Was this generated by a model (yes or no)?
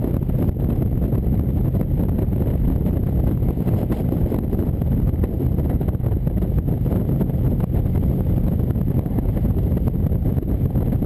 no